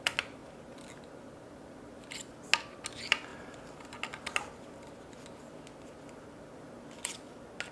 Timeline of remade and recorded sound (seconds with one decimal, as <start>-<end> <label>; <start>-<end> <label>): 0.0-7.7 recorded

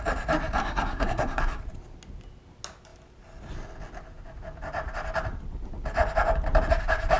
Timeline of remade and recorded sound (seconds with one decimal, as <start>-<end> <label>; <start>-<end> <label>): 0.0-0.6 recorded; 0.6-1.6 remade; 1.6-7.2 recorded

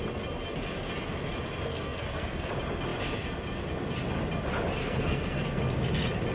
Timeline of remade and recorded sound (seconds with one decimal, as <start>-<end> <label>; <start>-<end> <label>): 0.0-1.7 recorded; 1.7-2.5 remade; 2.5-4.8 recorded; 4.8-5.6 remade; 5.6-6.3 recorded

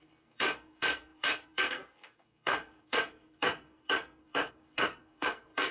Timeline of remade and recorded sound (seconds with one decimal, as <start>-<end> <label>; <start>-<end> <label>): 0.0-5.7 remade

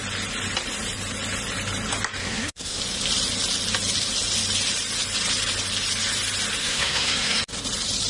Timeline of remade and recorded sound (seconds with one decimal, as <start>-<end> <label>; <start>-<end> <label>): 0.0-2.2 recorded; 2.2-2.8 remade; 2.8-6.6 recorded; 6.6-7.4 remade; 7.4-8.1 recorded